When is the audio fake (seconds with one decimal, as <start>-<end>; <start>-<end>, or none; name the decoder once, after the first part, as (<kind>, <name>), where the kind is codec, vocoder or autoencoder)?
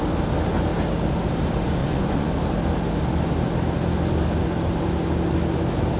1.8-2.3 (vocoder, Vocos)